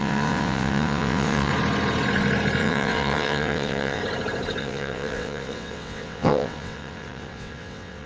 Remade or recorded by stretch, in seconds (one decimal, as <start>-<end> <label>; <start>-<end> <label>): 0.0-1.5 remade; 1.5-2.6 recorded; 2.6-4.0 remade; 4.0-4.6 recorded; 4.6-8.1 remade